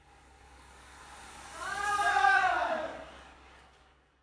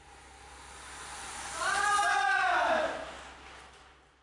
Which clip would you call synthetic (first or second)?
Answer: first